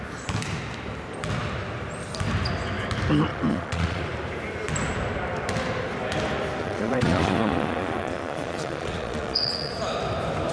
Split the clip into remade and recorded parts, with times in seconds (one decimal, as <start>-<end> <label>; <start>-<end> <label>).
0.0-3.3 recorded; 3.3-4.0 remade; 4.0-6.6 recorded; 6.6-9.7 remade; 9.7-10.5 recorded